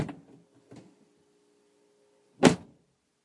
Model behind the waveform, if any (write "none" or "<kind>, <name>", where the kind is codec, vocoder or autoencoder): none